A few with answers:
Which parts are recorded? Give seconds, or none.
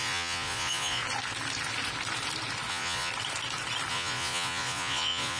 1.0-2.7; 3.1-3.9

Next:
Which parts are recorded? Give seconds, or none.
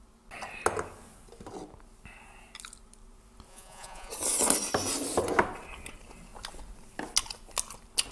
0.0-3.5; 4.1-8.1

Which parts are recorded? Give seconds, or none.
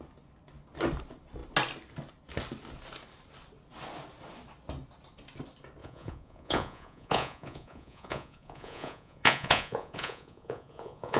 0.0-5.8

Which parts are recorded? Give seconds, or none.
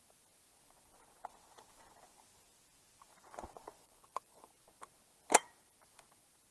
0.0-3.1; 4.5-6.5